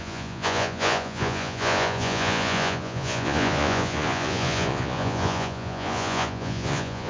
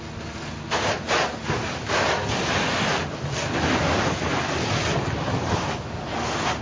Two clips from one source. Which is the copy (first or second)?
first